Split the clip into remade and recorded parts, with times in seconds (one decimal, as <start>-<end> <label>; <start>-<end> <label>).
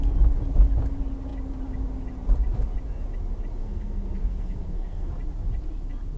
0.0-3.6 recorded; 3.6-5.1 remade; 5.1-6.2 recorded